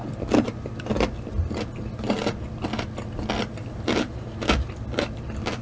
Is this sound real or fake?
real